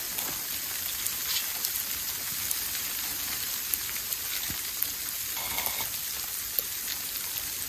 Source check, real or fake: real